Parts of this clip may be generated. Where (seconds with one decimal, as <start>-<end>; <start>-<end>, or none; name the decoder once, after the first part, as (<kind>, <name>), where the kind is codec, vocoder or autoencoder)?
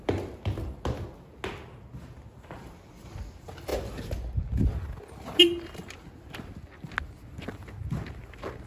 none